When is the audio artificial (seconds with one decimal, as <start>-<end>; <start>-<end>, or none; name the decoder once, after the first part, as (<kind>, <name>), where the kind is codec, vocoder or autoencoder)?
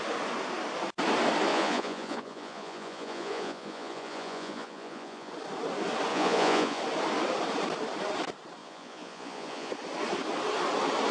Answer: 1.5-5.3 (vocoder, Vocos); 6.1-6.8; 8.6-9.7